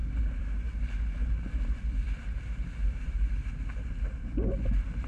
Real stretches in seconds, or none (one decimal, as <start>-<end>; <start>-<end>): 0.0-2.8; 3.4-5.1